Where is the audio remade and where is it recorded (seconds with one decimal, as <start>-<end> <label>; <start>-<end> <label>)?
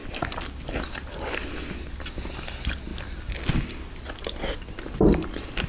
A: 0.0-5.7 recorded